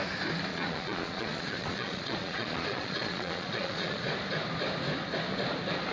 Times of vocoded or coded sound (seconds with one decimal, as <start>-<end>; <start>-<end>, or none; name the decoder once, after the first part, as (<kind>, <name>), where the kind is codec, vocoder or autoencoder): 0.5-4.0 (vocoder, Vocos)